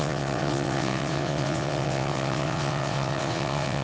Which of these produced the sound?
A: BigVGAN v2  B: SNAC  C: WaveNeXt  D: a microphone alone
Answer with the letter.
C